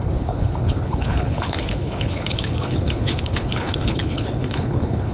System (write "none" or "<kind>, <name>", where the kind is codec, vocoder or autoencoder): codec, HILCodec